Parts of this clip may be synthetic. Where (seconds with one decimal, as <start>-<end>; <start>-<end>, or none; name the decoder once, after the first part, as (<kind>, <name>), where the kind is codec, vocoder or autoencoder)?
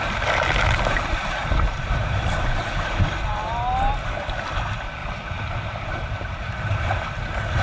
1.4-3.0 (vocoder, BigVGAN v2); 5.0-6.9